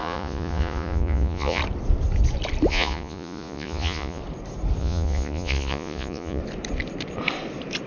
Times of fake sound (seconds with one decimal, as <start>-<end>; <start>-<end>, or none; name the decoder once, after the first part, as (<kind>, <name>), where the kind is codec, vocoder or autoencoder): 0.0-1.6 (vocoder, Vocos); 2.7-4.2; 4.8-6.4